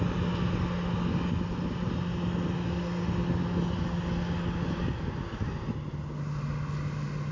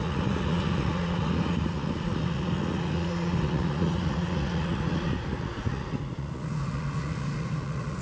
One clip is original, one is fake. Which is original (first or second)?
first